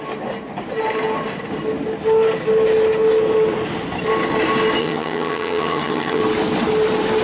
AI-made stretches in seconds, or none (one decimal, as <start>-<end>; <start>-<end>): 4.8-6.2